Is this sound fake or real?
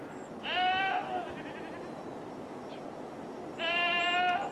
real